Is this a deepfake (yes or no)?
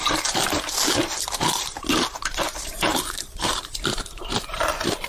yes